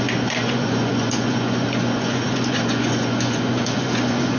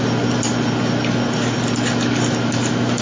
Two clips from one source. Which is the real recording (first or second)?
second